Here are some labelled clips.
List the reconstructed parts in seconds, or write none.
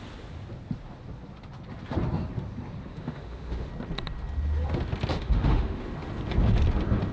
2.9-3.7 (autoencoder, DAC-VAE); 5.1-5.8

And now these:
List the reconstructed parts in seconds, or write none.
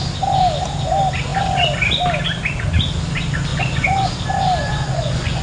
3.5-4.1 (vocoder, Vocos); 4.6-5.4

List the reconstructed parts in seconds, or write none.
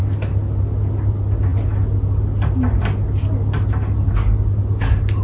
none